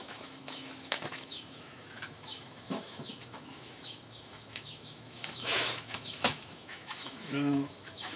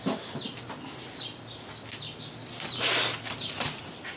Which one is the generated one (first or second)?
first